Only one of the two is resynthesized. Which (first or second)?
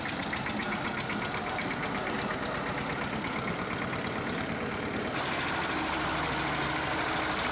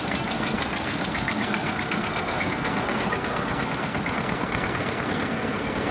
second